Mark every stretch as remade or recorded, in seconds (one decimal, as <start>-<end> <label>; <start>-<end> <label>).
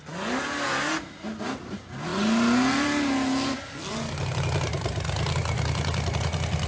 0.0-6.7 recorded